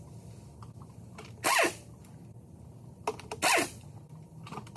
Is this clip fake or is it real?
real